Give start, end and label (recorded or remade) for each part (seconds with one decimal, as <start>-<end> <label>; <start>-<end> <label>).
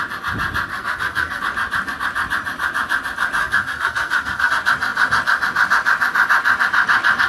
0.0-0.7 recorded; 0.7-1.4 remade; 1.4-3.4 recorded; 3.4-4.5 remade; 4.5-7.3 recorded